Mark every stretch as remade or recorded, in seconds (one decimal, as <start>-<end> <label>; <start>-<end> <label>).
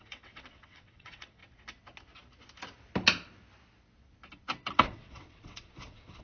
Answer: 0.0-1.4 remade; 1.4-4.7 recorded; 4.7-6.2 remade